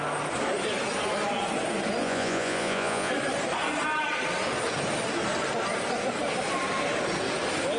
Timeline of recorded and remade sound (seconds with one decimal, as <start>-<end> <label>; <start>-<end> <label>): 0.0-2.0 recorded; 2.0-3.1 remade; 3.1-7.8 recorded